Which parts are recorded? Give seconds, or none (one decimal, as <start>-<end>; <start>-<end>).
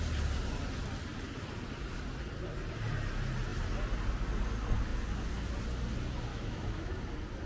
0.0-6.3; 7.0-7.5